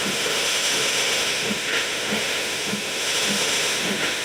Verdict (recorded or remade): remade